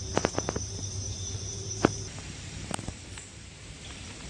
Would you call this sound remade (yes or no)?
yes